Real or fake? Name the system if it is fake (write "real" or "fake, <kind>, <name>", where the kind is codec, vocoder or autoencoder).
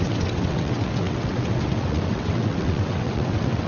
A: fake, vocoder, WaveNeXt